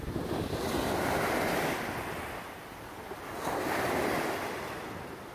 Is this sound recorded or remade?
recorded